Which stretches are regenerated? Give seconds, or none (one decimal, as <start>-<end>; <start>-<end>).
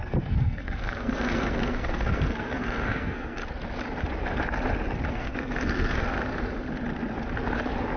0.0-3.4; 5.1-6.1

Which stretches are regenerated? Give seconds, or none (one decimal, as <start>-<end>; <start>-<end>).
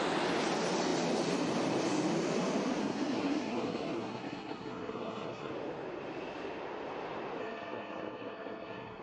2.8-5.5; 7.4-9.0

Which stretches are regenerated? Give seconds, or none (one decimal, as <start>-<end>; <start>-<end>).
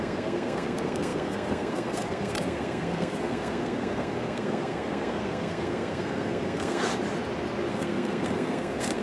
0.0-6.9; 7.7-9.0